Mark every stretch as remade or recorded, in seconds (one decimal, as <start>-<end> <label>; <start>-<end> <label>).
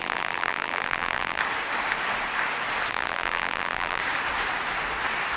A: 0.0-1.4 remade; 1.4-2.9 recorded; 2.9-4.0 remade; 4.0-5.4 recorded